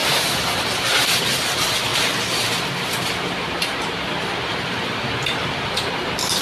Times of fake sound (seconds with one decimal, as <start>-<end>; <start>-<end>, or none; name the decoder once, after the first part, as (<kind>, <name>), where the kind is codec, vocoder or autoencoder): 0.0-1.2 (vocoder, BigVGAN v2); 1.9-5.7